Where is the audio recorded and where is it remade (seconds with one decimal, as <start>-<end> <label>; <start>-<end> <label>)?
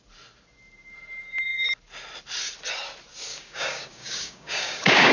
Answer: 0.0-3.3 recorded; 3.3-5.1 remade